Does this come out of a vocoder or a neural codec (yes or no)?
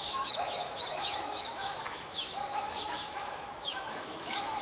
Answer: yes